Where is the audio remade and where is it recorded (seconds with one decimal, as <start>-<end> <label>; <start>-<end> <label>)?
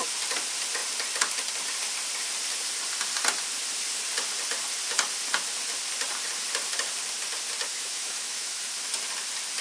0.0-7.7 recorded; 7.7-8.6 remade; 8.6-9.6 recorded